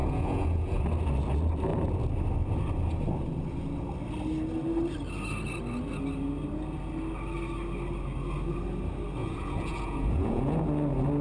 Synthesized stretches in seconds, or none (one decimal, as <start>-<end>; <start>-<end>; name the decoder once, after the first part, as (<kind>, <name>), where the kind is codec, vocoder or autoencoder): 0.0-0.8 (vocoder, Vocos); 9.2-10.6